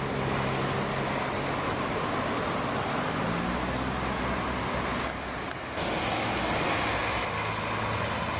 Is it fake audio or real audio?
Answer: real